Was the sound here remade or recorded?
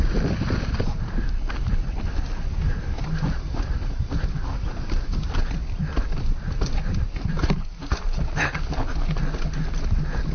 recorded